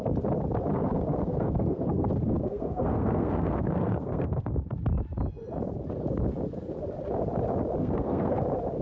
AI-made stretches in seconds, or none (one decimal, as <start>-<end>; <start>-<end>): 0.7-4.5; 7.8-8.4

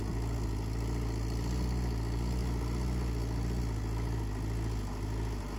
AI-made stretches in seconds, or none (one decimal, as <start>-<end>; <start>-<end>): none

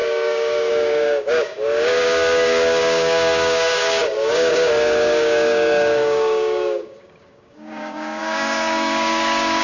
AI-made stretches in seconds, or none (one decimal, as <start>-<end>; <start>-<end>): 0.0-9.6

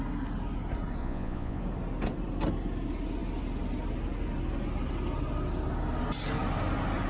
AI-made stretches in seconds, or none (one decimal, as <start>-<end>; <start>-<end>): 1.0-1.6

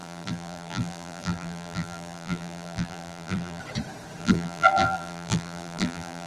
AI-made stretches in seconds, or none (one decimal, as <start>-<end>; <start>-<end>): 0.0-3.6; 4.2-6.3